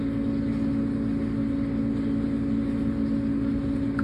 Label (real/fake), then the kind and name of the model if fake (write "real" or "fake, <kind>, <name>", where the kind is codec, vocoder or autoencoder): real